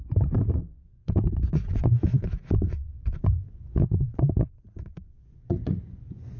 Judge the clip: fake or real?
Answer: fake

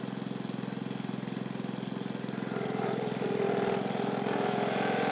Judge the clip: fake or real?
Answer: real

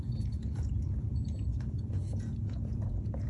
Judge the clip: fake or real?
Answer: fake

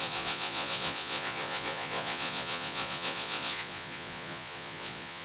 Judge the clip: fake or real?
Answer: fake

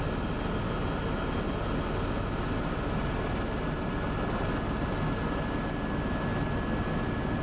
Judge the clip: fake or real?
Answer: real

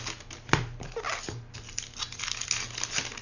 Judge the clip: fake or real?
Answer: real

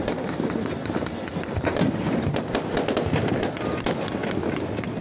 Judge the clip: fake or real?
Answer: real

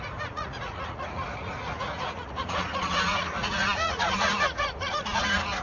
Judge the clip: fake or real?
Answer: fake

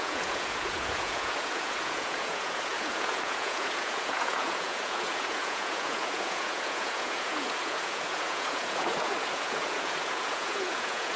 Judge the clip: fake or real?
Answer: fake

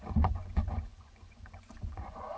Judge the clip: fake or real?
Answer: fake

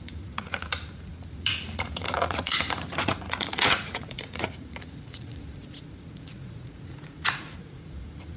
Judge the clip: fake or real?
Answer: fake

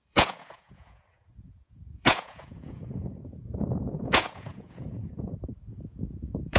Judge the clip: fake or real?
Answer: fake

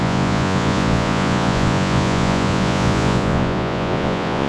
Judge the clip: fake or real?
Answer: fake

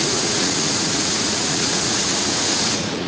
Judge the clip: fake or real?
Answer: fake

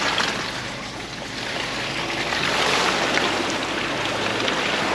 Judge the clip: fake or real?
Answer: real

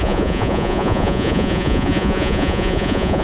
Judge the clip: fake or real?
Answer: fake